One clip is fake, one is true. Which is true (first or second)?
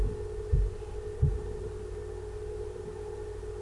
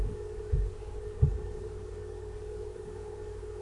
first